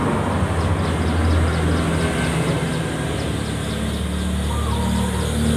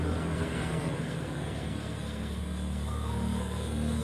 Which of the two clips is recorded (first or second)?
first